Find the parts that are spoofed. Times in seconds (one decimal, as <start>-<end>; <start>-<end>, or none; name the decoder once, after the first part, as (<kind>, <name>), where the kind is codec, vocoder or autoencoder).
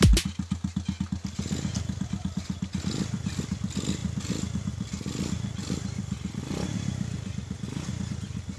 none